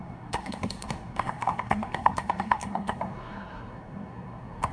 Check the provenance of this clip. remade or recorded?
remade